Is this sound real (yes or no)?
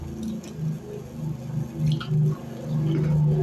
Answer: yes